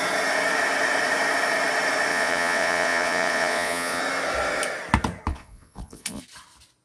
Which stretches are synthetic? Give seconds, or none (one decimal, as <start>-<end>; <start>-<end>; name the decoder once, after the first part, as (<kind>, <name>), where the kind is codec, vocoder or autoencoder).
2.1-4.0 (vocoder, Vocos); 5.3-6.2